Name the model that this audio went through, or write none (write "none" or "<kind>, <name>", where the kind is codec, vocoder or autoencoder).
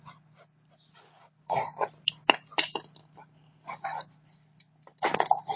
none